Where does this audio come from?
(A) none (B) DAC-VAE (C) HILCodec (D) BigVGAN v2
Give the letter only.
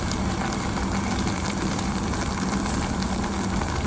A